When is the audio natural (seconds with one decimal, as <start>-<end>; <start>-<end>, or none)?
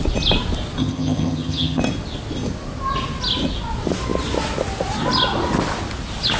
0.0-0.8; 1.8-6.4